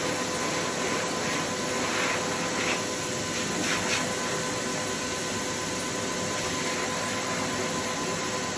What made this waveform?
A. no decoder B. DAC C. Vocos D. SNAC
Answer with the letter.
A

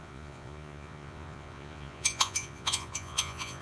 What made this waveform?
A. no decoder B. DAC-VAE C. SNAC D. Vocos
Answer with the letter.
D